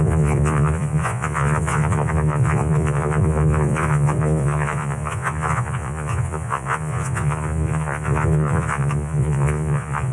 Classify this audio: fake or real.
fake